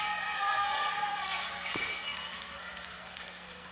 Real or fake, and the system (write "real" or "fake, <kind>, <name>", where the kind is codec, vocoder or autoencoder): fake, codec, SNAC